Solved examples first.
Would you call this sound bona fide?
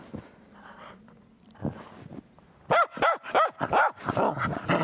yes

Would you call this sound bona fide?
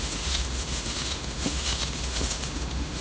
no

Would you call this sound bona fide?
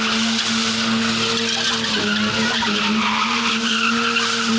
yes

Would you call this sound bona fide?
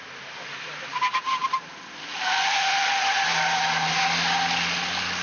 yes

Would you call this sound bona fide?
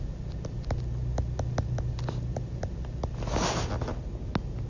yes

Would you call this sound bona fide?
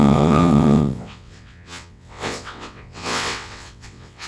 no